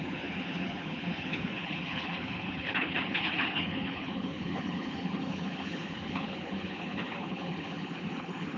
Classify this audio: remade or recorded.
remade